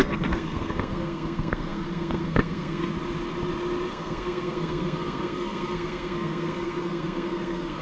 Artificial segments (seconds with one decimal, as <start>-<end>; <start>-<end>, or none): 0.0-2.9; 3.9-7.8